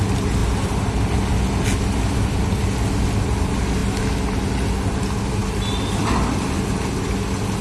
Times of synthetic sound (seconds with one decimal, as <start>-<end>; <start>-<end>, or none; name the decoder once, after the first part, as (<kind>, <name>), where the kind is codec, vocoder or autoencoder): none